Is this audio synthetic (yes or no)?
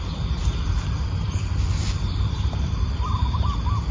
yes